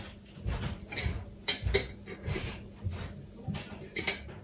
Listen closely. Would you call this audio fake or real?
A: real